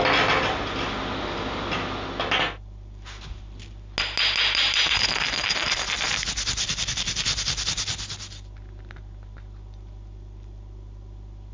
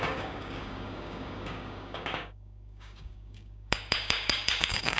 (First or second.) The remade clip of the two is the second